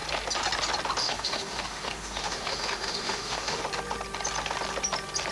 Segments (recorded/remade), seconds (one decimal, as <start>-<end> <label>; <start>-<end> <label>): 0.0-1.0 recorded; 1.0-3.6 remade; 3.6-5.3 recorded